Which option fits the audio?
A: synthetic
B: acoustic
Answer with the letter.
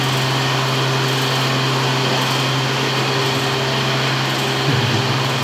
B